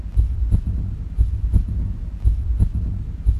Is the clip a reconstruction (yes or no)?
no